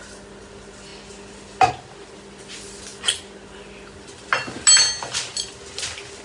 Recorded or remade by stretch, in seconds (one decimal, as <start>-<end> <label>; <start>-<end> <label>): 0.0-6.2 recorded